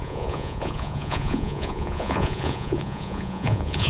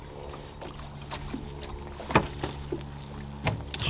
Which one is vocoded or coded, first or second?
first